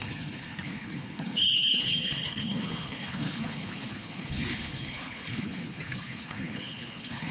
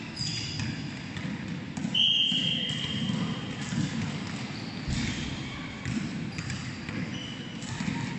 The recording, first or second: second